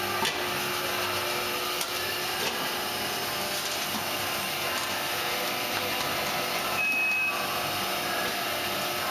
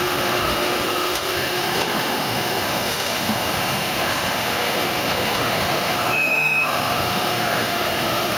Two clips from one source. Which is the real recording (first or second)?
first